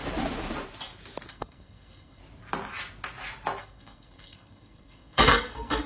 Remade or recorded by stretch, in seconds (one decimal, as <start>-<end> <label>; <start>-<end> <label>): 0.0-1.3 recorded; 1.3-2.2 remade; 2.2-3.6 recorded; 3.6-5.9 remade

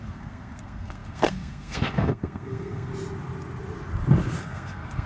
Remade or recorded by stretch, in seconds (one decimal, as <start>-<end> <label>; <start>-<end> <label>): 0.0-2.9 remade; 2.9-4.4 recorded; 4.4-5.1 remade

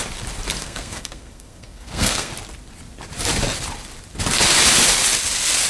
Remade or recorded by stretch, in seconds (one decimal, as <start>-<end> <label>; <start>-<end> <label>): 0.0-0.6 recorded; 0.6-2.3 remade; 2.3-5.7 recorded

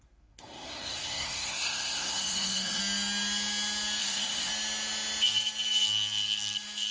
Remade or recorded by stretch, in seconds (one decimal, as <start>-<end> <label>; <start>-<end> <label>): 0.0-2.8 remade; 2.8-4.0 recorded; 4.0-4.5 remade; 4.5-6.9 recorded

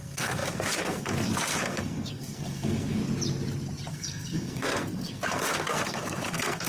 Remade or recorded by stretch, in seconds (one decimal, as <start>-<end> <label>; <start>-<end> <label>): 0.0-3.0 remade; 3.0-3.9 recorded; 3.9-6.7 remade

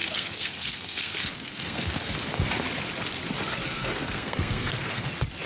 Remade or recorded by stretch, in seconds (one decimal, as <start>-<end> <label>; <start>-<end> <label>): 0.0-2.1 remade; 2.1-3.7 recorded; 3.7-5.1 remade; 5.1-5.5 recorded

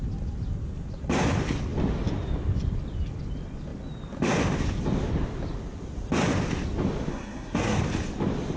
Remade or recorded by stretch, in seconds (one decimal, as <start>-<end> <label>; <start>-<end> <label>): 0.0-7.1 recorded; 7.1-7.8 remade; 7.8-8.6 recorded